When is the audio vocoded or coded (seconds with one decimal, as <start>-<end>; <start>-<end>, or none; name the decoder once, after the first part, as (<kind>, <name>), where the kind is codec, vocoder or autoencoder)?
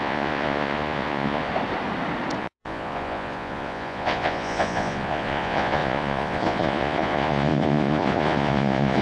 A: 0.0-1.5 (vocoder, Vocos); 2.4-9.0